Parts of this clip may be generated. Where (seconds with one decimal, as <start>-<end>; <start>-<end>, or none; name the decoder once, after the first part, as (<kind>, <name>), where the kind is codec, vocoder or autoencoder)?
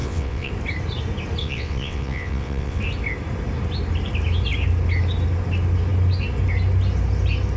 0.0-0.5 (vocoder, WaveNeXt); 1.4-2.8